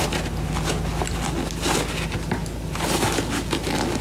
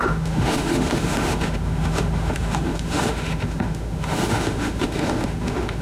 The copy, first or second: second